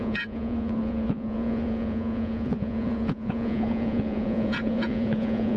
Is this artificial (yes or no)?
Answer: yes